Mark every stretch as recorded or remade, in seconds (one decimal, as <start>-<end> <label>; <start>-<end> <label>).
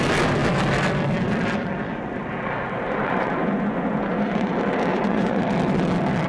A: 0.0-3.0 recorded; 3.0-4.5 remade; 4.5-4.9 recorded; 4.9-5.4 remade; 5.4-6.3 recorded